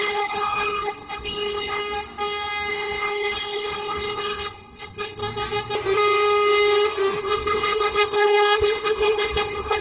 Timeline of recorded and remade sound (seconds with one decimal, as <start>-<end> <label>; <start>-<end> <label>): 0.0-1.8 remade; 1.8-2.7 recorded; 2.7-5.2 remade; 5.2-7.2 recorded; 7.2-9.8 remade